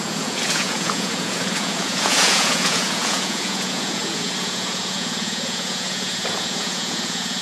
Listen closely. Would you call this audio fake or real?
fake